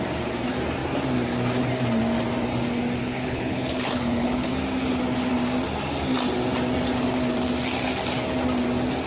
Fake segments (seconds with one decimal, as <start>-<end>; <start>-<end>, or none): 3.0-4.5